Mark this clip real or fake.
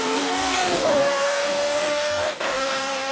fake